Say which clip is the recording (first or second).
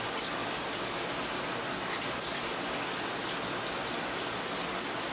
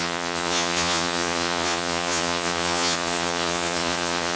first